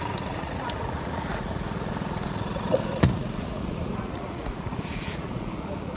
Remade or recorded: remade